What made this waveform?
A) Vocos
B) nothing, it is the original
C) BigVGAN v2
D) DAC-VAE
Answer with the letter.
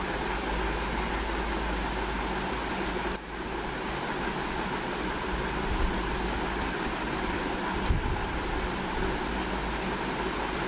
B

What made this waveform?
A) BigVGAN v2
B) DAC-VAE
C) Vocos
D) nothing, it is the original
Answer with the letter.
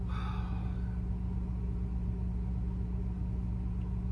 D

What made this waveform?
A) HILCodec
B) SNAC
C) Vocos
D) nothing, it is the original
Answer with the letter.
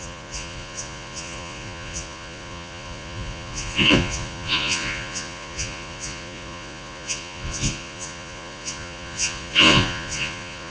C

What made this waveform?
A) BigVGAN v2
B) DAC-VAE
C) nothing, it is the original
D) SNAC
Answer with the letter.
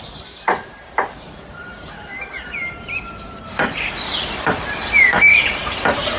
A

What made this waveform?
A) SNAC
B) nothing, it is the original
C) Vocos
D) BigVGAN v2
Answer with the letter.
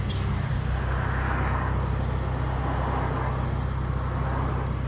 B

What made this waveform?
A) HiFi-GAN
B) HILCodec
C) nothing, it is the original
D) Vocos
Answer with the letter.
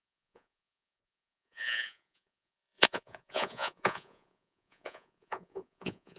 D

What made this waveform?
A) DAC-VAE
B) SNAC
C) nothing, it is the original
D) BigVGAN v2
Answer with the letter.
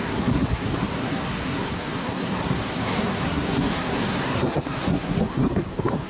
B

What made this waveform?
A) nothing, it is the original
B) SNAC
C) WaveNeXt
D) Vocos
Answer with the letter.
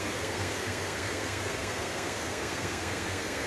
B